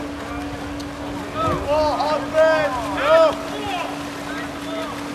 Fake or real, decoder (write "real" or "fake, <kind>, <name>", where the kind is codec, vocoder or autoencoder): real